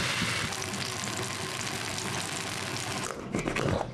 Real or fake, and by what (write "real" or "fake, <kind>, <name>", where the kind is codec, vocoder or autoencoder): real